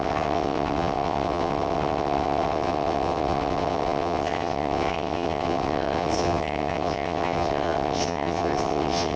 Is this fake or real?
fake